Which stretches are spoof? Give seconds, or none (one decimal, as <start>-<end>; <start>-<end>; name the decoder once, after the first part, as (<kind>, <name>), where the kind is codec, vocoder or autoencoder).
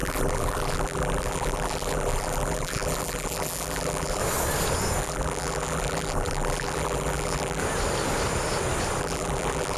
0.0-4.2 (vocoder, BigVGAN v2); 5.0-7.6; 9.0-9.8